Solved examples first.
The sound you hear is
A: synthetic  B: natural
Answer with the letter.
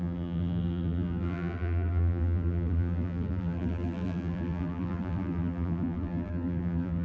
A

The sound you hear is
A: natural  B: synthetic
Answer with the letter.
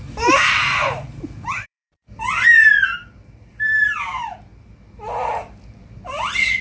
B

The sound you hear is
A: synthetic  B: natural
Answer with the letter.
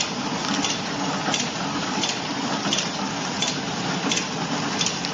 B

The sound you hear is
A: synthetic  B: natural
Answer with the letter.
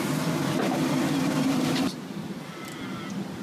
B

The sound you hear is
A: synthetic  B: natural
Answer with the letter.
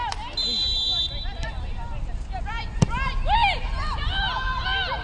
A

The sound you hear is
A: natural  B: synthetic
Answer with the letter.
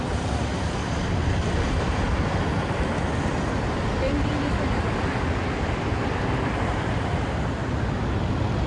A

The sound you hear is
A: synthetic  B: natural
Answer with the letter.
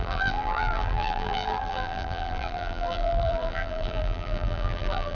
A